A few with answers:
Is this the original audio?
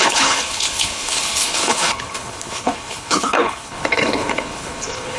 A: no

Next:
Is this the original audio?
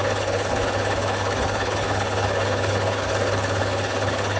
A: no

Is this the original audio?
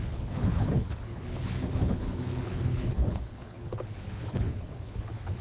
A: no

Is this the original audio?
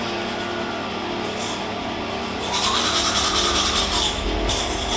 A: yes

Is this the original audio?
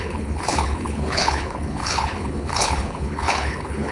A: no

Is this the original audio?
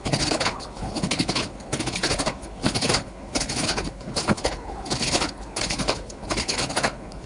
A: no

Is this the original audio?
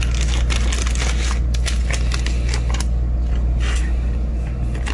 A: yes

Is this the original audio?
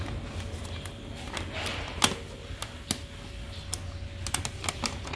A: yes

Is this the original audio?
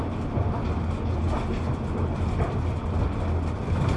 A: yes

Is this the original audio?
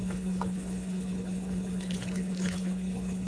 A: no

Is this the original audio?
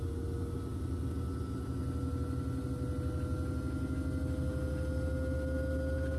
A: yes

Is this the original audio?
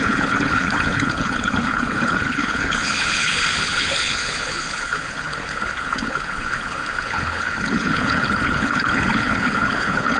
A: no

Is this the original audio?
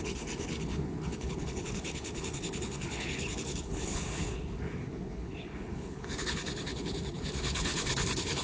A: no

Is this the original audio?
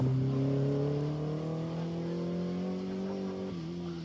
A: yes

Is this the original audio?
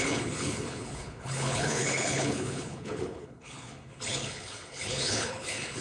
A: no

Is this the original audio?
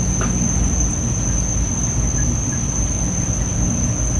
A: yes